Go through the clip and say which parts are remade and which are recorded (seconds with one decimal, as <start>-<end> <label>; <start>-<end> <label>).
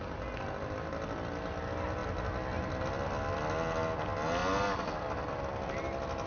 0.0-6.3 recorded